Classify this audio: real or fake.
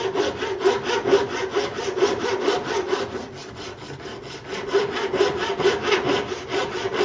real